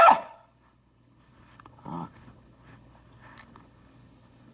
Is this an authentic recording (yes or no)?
no